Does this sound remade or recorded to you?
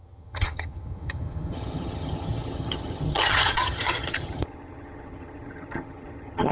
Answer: remade